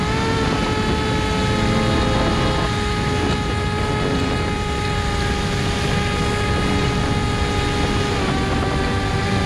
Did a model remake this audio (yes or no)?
no